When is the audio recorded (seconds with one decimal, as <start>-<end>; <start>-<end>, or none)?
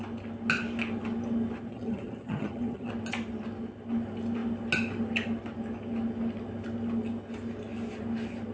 0.0-1.7; 2.9-8.5